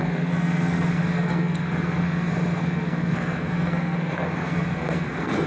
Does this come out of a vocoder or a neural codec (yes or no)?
yes